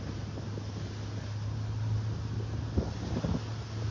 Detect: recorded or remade recorded